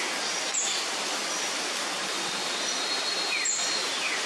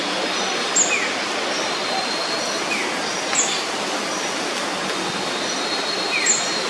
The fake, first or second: first